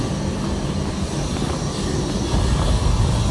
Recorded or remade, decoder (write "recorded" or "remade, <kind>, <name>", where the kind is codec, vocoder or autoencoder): recorded